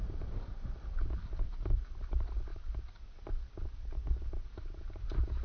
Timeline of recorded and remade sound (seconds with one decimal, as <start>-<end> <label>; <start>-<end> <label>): 0.0-5.4 recorded